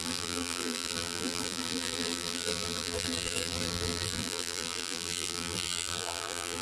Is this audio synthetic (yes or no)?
yes